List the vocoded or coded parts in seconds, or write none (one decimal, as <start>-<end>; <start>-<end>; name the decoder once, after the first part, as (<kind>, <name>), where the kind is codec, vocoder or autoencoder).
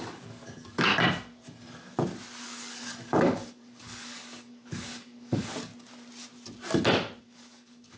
0.0-0.9 (codec, DAC); 2.4-5.7; 7.2-8.0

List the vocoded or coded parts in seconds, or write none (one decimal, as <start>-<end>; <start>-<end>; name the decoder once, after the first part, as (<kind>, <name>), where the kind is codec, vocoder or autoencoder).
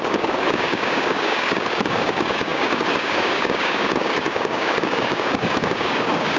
0.0-6.4 (codec, DAC)